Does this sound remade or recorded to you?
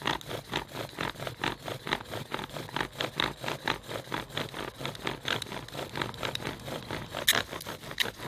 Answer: recorded